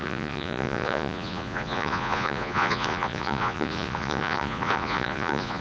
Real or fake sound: fake